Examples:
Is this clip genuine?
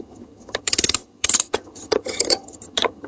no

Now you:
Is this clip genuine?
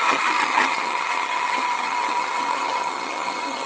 no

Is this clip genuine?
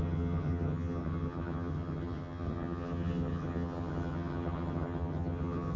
no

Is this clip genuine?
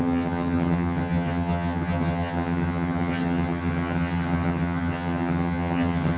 no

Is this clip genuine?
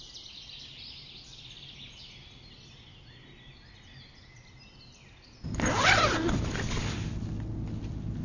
yes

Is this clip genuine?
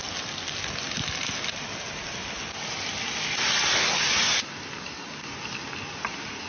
yes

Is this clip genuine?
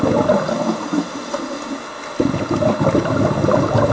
yes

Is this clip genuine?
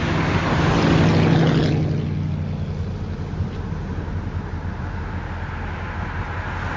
yes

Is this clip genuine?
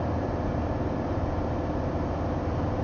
yes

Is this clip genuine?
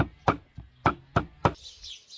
yes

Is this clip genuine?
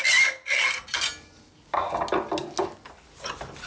yes